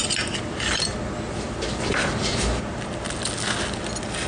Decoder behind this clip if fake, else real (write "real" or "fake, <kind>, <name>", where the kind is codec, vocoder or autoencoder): real